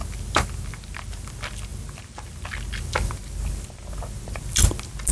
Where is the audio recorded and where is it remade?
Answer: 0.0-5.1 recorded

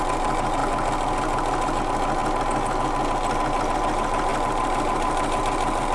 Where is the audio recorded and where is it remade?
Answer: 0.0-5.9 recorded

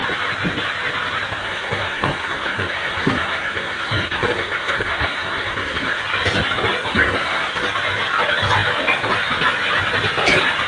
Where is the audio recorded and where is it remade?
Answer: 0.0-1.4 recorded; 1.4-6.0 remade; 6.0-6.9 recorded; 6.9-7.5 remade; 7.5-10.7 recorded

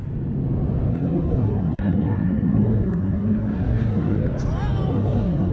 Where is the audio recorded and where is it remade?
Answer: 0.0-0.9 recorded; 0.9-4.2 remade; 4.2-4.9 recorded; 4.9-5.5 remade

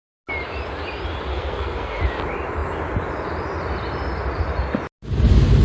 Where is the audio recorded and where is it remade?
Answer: 0.0-1.3 recorded; 1.3-2.0 remade; 2.0-5.6 recorded

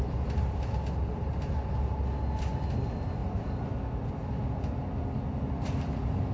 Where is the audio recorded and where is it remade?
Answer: 0.0-3.2 recorded; 3.2-3.8 remade; 3.8-6.3 recorded